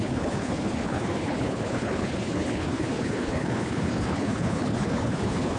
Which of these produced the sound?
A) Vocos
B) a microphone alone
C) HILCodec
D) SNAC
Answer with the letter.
C